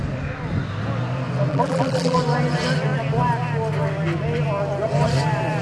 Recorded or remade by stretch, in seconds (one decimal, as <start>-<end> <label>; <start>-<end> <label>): 0.0-1.5 recorded; 1.5-2.2 remade; 2.2-5.6 recorded